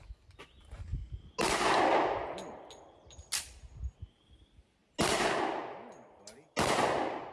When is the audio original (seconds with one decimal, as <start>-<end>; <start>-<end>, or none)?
0.0-7.3